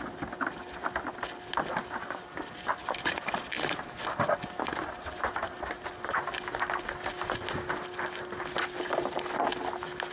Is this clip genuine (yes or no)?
yes